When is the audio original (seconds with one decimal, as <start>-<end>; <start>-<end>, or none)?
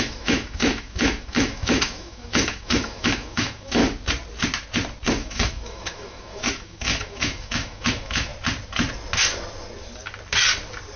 3.8-5.1; 8.3-11.0